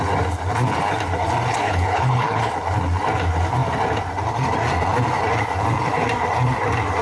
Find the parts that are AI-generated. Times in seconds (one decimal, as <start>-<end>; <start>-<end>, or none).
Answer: 1.5-2.5